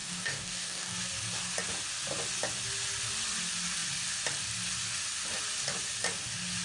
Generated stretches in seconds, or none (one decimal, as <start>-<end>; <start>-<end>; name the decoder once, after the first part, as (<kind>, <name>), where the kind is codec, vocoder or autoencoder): 0.0-1.0 (codec, DAC)